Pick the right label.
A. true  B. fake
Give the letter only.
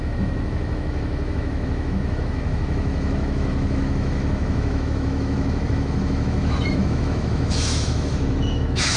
B